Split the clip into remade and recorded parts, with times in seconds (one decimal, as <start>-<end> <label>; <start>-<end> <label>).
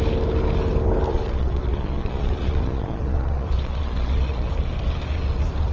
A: 0.0-1.1 recorded; 1.1-4.5 remade; 4.5-5.7 recorded